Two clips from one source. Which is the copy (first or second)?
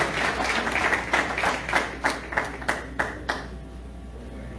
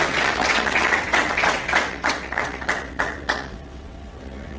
second